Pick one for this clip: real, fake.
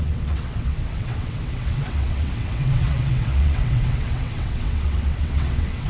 fake